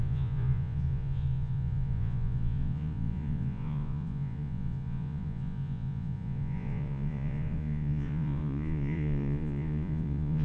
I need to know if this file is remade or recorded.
remade